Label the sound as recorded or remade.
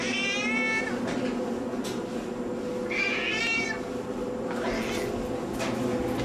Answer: recorded